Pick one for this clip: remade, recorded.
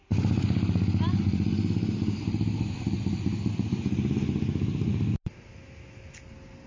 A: recorded